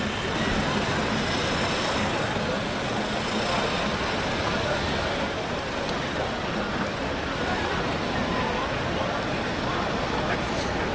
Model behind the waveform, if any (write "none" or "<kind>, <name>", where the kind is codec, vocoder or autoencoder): none